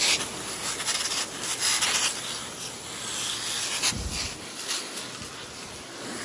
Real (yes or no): yes